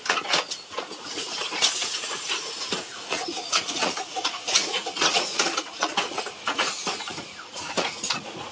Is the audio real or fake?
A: fake